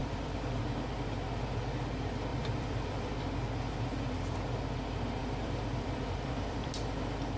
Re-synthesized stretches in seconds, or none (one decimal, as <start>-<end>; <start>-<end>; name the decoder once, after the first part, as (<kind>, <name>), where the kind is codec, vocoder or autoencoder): 0.0-0.6 (vocoder, BigVGAN v2); 2.3-3.2; 5.2-6.7